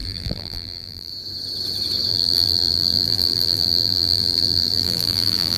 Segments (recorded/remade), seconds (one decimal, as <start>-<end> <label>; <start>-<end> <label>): 0.0-1.1 remade; 1.1-2.1 recorded; 2.1-5.6 remade